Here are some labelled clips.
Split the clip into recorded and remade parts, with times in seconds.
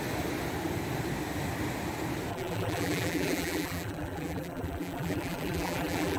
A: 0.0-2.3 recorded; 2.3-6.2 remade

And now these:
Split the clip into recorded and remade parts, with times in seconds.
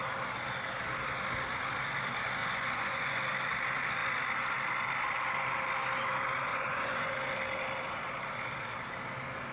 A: 0.0-2.4 recorded; 2.4-3.2 remade; 3.2-6.5 recorded; 6.5-7.1 remade; 7.1-9.5 recorded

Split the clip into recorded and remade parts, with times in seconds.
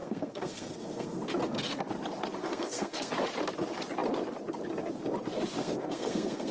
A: 0.0-1.2 remade; 1.2-2.4 recorded; 2.4-3.1 remade; 3.1-5.6 recorded; 5.6-6.5 remade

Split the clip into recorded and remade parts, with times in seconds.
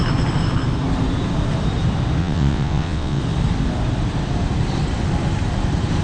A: 0.0-2.2 recorded; 2.2-3.2 remade; 3.2-6.0 recorded